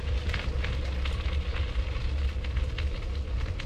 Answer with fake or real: real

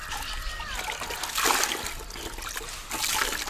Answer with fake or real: real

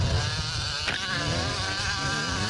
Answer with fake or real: real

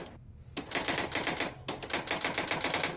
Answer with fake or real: real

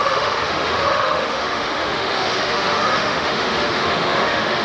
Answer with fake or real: fake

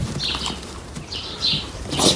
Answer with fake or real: real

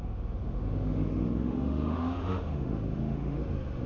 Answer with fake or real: fake